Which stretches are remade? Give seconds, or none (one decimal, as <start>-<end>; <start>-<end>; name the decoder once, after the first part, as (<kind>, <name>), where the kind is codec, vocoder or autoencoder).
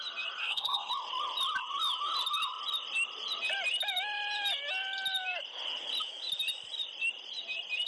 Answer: 0.4-0.9 (codec, SNAC)